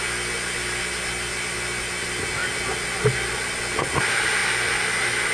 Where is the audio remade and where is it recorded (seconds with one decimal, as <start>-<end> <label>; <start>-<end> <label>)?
0.0-5.3 recorded